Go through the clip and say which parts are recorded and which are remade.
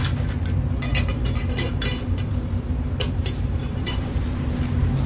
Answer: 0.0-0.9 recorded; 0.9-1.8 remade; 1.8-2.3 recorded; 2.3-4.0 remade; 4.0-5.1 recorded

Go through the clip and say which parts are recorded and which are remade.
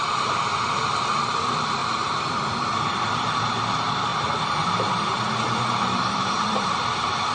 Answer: 0.0-4.1 recorded; 4.1-6.8 remade; 6.8-7.3 recorded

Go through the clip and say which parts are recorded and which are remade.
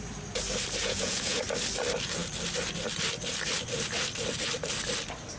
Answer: 0.0-0.8 recorded; 0.8-1.4 remade; 1.4-5.4 recorded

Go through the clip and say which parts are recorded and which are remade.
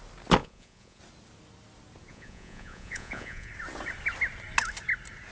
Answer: 0.0-0.4 recorded; 0.4-1.0 remade; 1.0-2.1 recorded; 2.1-3.5 remade; 3.5-5.3 recorded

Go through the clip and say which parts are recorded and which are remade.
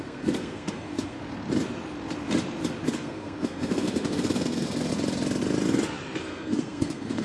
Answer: 0.0-1.2 remade; 1.2-2.9 recorded; 2.9-4.9 remade; 4.9-6.2 recorded; 6.2-7.2 remade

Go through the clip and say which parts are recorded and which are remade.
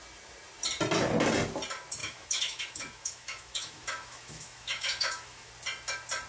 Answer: 0.0-2.0 recorded; 2.0-5.5 remade; 5.5-6.3 recorded